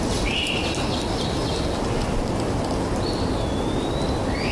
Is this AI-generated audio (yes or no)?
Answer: no